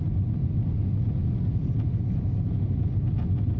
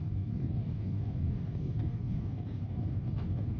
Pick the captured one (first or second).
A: first